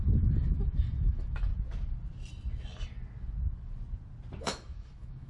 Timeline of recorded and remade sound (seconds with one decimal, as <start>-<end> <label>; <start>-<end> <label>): 0.0-1.5 remade; 1.5-4.4 recorded; 4.4-5.3 remade